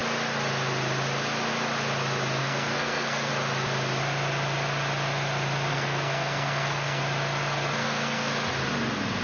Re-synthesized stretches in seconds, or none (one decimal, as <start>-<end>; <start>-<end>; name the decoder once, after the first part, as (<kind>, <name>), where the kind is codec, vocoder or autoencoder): 2.4-3.3 (codec, SNAC); 5.7-7.0; 7.8-8.3